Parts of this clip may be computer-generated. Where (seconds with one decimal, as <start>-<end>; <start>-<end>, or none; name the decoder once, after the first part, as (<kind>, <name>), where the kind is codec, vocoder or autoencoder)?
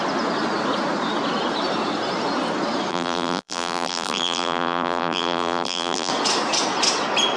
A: 2.9-6.1 (vocoder, BigVGAN v2)